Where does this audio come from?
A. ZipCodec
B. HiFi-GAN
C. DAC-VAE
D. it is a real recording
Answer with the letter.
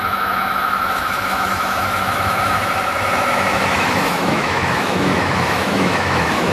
C